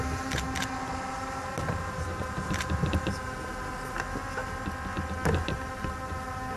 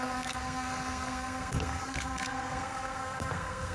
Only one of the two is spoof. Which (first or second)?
second